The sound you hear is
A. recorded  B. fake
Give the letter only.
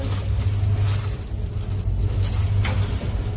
A